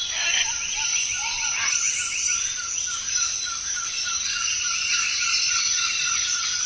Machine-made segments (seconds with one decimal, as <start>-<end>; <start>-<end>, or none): 0.9-1.9